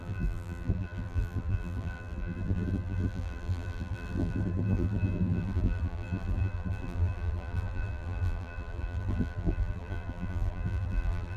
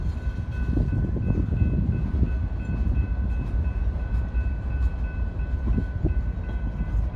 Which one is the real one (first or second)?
second